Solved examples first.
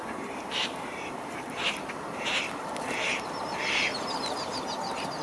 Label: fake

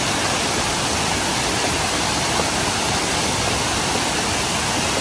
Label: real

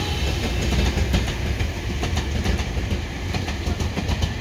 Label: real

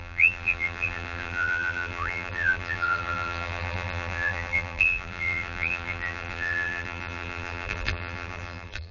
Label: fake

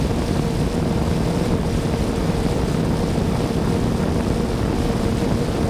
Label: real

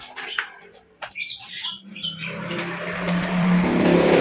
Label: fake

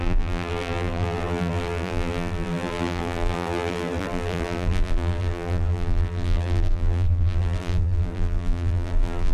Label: fake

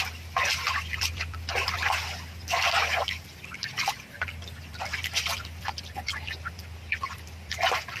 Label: real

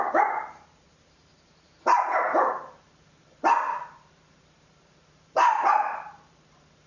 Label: fake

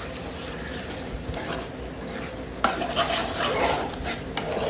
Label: real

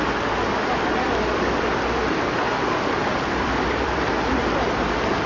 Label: real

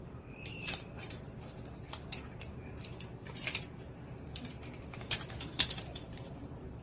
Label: fake